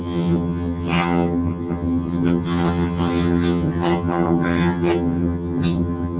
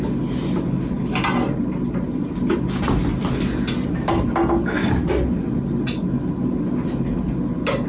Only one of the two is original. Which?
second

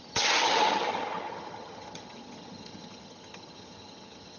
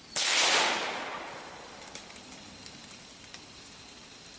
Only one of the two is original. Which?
second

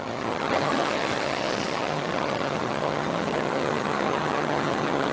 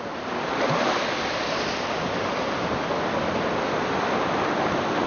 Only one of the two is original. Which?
second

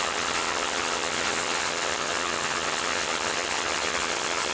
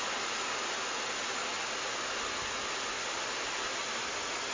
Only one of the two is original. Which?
second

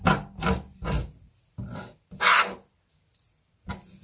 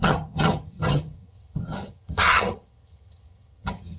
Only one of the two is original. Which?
first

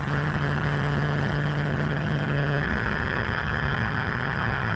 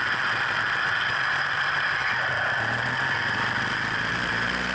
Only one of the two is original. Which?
second